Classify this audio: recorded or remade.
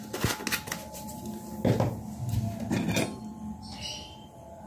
recorded